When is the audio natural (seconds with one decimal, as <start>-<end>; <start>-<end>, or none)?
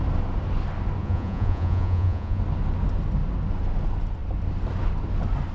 0.0-1.0; 2.4-5.5